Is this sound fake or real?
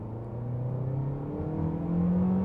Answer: real